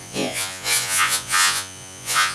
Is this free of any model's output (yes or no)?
no